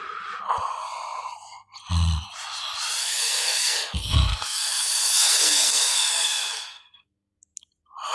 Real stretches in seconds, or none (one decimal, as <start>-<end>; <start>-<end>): 0.0-3.0; 7.4-8.1